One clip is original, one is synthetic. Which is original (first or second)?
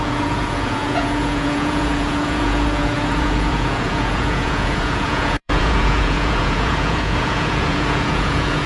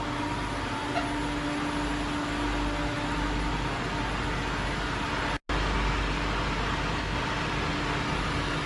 second